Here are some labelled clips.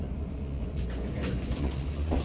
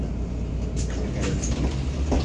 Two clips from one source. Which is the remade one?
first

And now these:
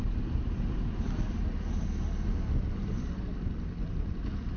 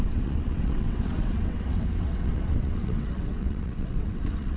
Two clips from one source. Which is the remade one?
second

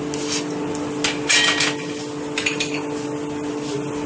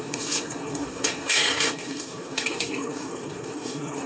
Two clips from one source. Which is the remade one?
second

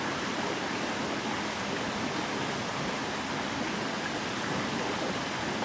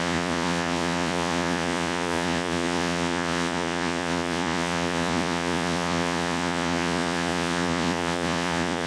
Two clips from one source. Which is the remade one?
second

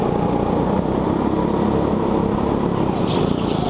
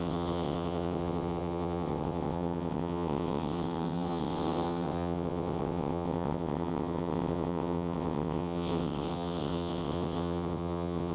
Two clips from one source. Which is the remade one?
second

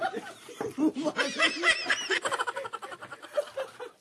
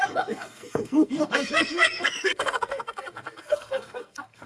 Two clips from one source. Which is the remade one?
second